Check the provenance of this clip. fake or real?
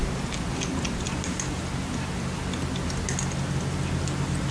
real